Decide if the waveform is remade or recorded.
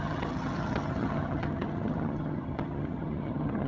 remade